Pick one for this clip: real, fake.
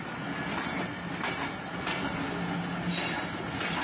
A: real